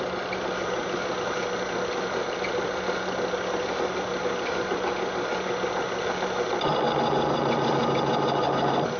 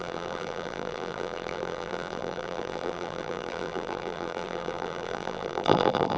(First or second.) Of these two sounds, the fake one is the second